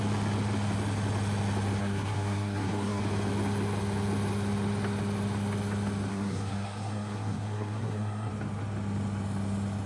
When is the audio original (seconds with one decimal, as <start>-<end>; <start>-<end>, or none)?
0.0-1.8; 3.0-6.1; 8.3-9.9